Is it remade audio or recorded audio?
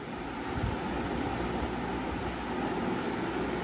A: recorded